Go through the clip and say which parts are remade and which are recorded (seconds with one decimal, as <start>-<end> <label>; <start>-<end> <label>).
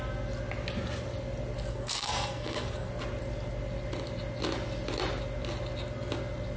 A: 0.0-1.7 recorded; 1.7-2.9 remade; 2.9-6.6 recorded